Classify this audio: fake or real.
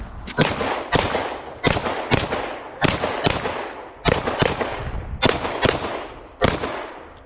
real